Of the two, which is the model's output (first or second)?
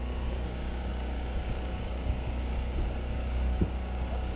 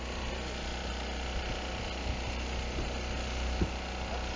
first